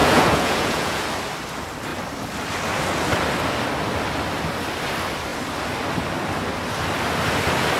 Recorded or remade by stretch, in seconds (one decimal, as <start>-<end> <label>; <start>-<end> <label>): 0.0-1.0 remade; 1.0-7.8 recorded